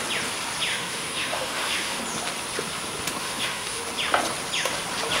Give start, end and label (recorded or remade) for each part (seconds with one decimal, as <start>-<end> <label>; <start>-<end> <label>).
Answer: 0.0-0.7 recorded; 0.7-2.0 remade; 2.0-3.2 recorded; 3.2-3.8 remade; 3.8-5.2 recorded

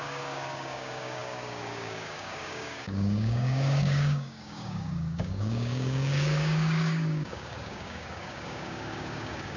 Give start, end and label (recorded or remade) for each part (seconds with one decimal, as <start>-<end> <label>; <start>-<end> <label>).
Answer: 0.0-9.6 remade

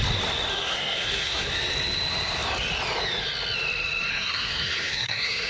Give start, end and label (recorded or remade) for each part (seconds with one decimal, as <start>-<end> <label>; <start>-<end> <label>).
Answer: 0.0-0.5 recorded; 0.5-1.5 remade; 1.5-4.1 recorded; 4.1-5.5 remade

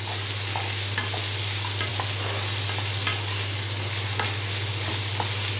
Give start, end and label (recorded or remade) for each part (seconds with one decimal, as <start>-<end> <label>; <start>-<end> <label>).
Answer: 0.0-5.6 recorded

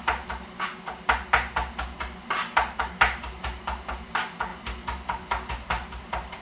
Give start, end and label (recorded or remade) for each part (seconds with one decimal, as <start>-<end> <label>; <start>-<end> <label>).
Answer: 0.0-0.7 remade; 0.7-2.8 recorded; 2.8-6.4 remade

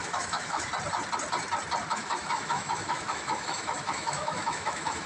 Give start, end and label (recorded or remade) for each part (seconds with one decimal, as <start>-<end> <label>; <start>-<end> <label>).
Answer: 0.0-0.7 remade; 0.7-1.9 recorded; 1.9-5.1 remade

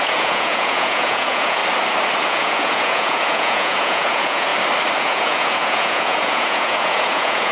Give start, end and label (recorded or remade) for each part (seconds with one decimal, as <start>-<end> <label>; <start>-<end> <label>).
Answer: 0.0-1.6 remade; 1.6-2.3 recorded; 2.3-4.5 remade; 4.5-5.0 recorded; 5.0-7.5 remade